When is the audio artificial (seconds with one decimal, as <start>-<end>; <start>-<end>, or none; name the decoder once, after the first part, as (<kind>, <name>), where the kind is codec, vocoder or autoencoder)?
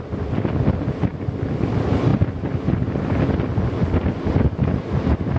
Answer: none